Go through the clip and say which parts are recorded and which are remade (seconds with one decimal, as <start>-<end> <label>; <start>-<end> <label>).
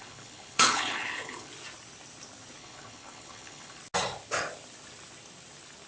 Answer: 0.0-1.5 remade; 1.5-2.6 recorded; 2.6-3.8 remade; 3.8-5.9 recorded